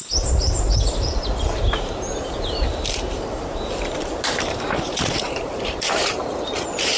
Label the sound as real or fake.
fake